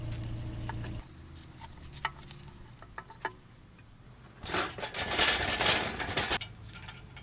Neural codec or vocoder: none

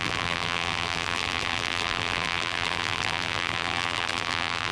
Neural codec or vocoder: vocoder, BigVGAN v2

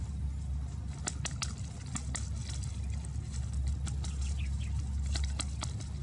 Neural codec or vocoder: none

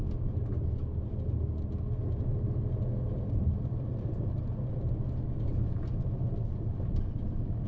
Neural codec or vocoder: none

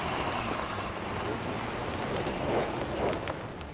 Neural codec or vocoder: vocoder, BigVGAN v2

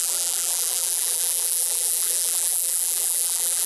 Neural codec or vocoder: vocoder, BigVGAN v2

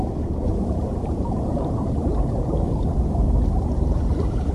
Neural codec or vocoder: vocoder, BigVGAN v2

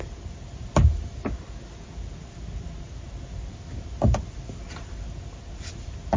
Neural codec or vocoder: none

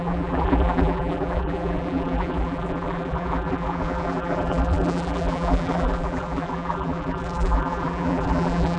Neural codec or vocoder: vocoder, BigVGAN v2